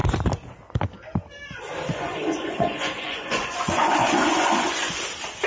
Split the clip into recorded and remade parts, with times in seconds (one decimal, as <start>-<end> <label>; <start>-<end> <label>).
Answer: 0.0-1.9 recorded; 1.9-5.0 remade; 5.0-5.5 recorded